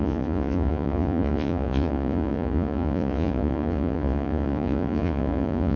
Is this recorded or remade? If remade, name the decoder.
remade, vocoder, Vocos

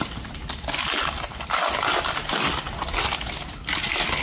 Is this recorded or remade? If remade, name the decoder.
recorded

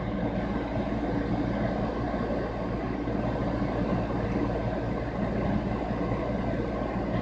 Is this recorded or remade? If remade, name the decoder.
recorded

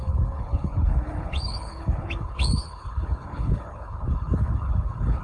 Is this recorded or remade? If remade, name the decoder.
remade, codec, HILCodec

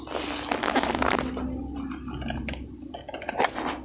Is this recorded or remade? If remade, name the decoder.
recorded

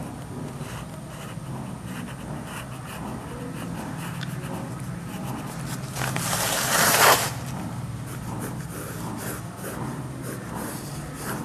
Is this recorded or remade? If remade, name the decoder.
recorded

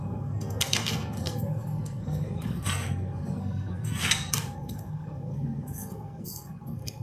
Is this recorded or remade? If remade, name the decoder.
remade, codec, SNAC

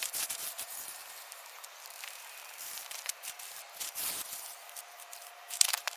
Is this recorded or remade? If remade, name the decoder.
remade, vocoder, BigVGAN v2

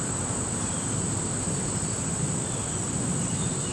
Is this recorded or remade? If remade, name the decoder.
remade, vocoder, BigVGAN v2